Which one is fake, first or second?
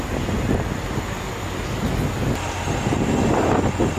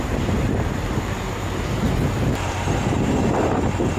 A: second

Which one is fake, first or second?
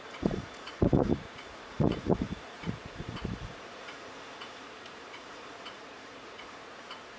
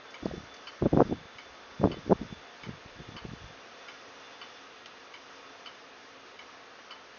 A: first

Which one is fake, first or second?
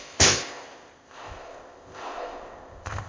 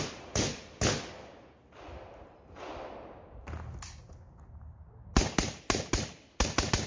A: first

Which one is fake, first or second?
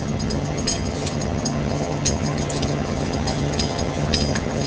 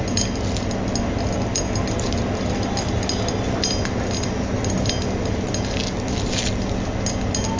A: first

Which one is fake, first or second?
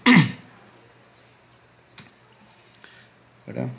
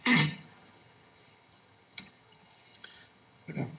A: second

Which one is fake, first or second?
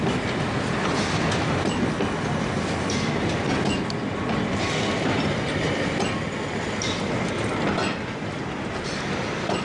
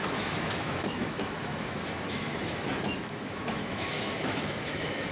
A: second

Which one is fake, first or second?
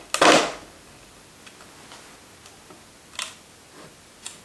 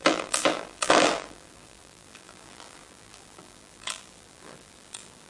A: second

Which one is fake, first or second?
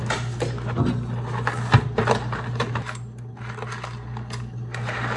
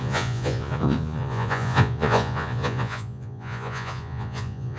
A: second